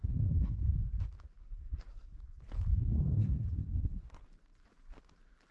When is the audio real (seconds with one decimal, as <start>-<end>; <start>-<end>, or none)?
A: 0.6-1.4; 2.2-2.8; 4.2-5.5

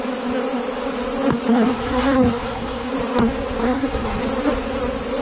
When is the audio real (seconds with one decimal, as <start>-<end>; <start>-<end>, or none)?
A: 0.0-1.5; 2.9-3.6; 4.2-5.2

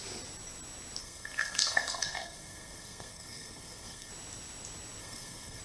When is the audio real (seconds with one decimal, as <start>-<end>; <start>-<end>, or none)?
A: 0.0-1.0; 4.1-5.0

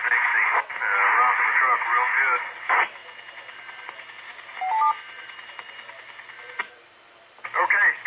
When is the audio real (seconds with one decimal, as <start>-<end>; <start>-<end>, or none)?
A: 0.0-8.1